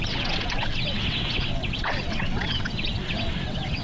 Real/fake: fake